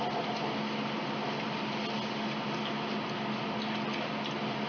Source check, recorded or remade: recorded